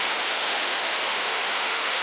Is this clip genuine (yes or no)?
no